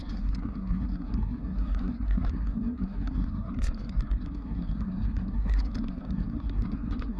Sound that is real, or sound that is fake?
fake